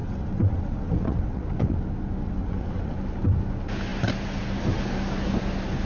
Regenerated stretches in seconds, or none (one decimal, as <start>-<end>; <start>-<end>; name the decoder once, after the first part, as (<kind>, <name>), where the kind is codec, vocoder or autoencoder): 0.0-1.8 (vocoder, WaveNeXt); 2.2-3.0